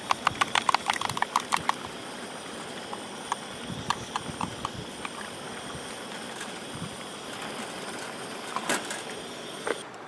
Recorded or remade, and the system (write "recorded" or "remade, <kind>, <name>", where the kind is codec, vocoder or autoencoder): recorded